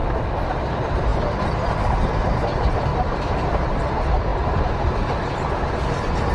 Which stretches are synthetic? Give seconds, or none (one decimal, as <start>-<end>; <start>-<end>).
0.0-0.6